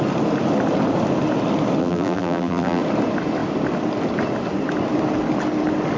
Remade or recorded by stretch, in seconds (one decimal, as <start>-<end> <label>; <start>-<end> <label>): 0.0-1.8 recorded; 1.8-2.8 remade; 2.8-6.0 recorded